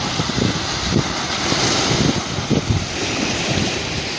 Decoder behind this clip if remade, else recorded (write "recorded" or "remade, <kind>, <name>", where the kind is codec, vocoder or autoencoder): recorded